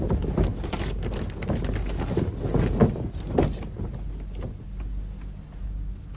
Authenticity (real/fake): real